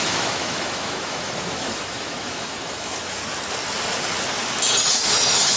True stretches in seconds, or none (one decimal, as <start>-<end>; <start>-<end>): 3.2-4.9